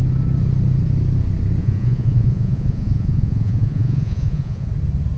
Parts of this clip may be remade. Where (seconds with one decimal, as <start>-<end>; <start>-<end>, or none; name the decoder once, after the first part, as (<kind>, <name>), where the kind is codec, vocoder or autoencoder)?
1.6-4.7 (vocoder, Vocos)